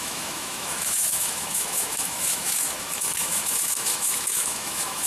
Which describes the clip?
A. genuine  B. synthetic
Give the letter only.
B